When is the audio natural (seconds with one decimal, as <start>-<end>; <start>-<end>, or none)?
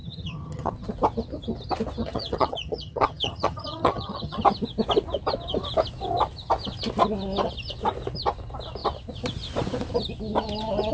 0.7-2.0; 4.4-10.9